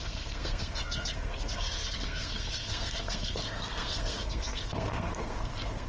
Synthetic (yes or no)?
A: yes